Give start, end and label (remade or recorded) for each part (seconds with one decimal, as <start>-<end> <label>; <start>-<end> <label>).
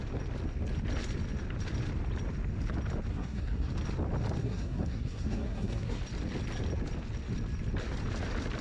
0.0-3.1 recorded; 3.1-3.7 remade; 3.7-4.4 recorded; 4.4-6.0 remade; 6.0-8.6 recorded